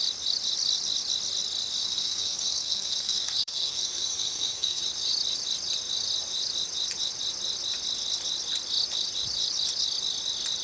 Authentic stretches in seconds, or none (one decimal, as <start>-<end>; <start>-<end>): 0.0-1.8; 4.8-10.6